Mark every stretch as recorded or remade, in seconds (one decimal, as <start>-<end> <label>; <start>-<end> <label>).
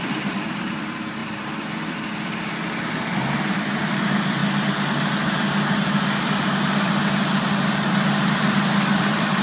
0.0-4.4 remade; 4.4-9.0 recorded; 9.0-9.4 remade